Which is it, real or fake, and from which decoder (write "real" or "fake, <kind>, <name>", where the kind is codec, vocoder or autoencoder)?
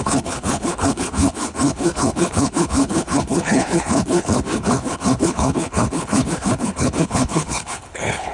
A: fake, codec, HILCodec